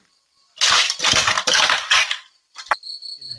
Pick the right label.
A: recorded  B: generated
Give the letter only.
A